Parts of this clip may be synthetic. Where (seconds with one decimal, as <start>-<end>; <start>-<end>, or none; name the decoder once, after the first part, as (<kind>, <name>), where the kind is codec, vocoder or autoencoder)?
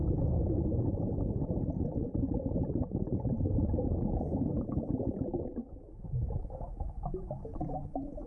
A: 2.6-5.6 (vocoder, BigVGAN v2); 6.9-8.3